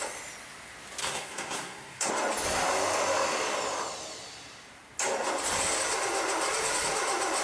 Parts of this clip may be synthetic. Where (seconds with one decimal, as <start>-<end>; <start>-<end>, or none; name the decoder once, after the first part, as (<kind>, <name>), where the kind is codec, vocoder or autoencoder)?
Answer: 1.0-2.1 (codec, SNAC)

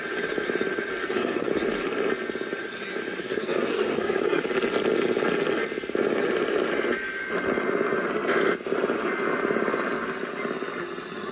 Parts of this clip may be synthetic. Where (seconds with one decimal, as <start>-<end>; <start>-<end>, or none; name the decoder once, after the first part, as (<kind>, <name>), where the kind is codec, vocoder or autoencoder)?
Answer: 1.0-1.5 (codec, SNAC); 3.2-4.4